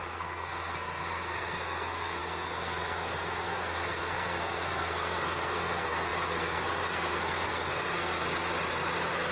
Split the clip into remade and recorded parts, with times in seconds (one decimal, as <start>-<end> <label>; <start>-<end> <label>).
0.0-8.2 remade; 8.2-9.3 recorded